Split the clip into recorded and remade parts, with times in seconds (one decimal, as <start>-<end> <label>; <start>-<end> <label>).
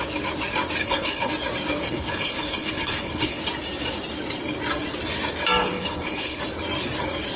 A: 0.0-0.8 recorded; 0.8-1.3 remade; 1.3-1.8 recorded; 1.8-3.4 remade; 3.4-5.6 recorded; 5.6-6.4 remade; 6.4-7.4 recorded